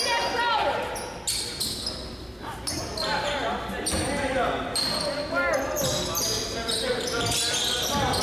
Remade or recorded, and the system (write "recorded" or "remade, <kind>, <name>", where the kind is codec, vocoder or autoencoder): recorded